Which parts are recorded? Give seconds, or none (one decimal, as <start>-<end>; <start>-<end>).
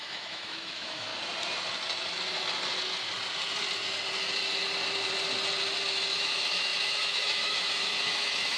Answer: 1.1-6.1